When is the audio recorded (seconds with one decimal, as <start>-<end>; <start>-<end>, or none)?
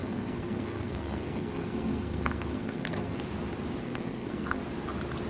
3.2-3.8; 4.6-5.3